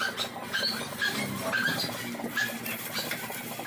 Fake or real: real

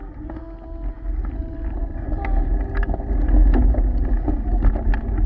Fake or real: real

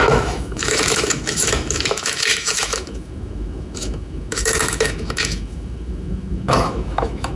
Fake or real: fake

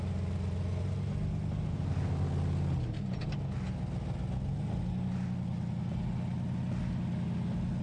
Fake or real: real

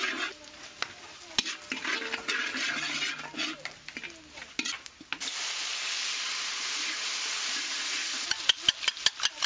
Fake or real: real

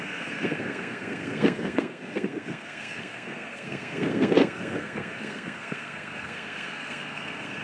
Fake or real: fake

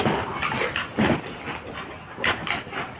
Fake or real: real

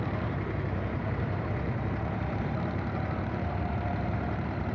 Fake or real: fake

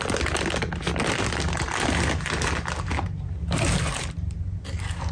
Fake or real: real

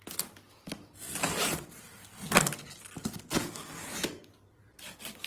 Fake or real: real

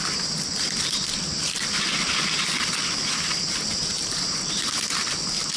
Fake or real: real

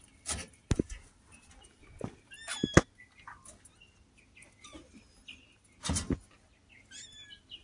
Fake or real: real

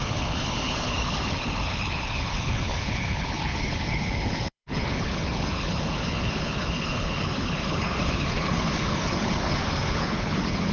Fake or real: fake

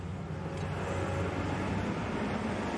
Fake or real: real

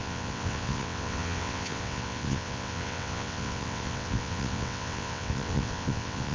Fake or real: fake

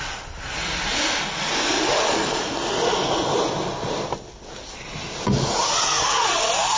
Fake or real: real